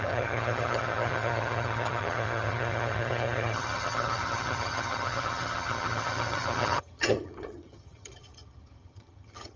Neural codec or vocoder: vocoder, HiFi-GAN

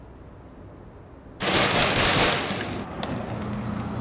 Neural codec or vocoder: none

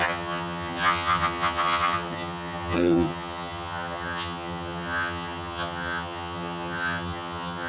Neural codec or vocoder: vocoder, HiFi-GAN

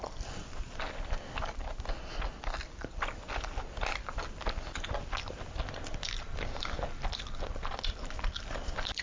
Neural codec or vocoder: none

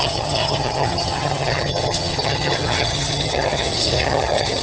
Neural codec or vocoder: vocoder, HiFi-GAN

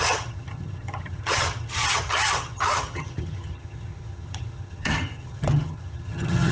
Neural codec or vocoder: vocoder, HiFi-GAN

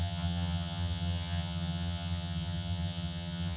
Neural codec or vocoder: vocoder, HiFi-GAN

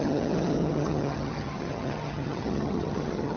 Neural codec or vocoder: vocoder, HiFi-GAN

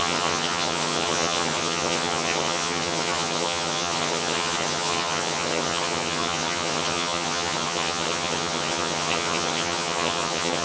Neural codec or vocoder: vocoder, HiFi-GAN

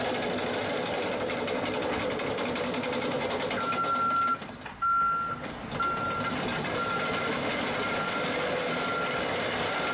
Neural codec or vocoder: none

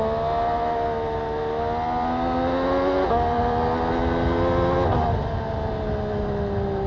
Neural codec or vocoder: none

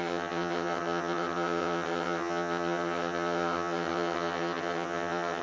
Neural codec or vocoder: vocoder, HiFi-GAN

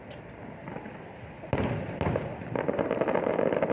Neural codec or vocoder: none